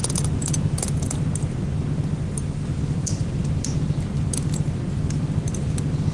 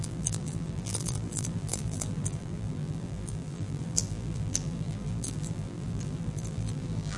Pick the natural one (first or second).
first